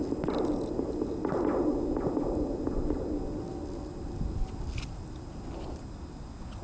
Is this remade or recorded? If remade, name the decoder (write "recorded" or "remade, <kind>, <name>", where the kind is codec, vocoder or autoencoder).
recorded